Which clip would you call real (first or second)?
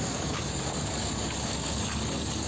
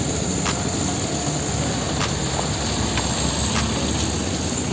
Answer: second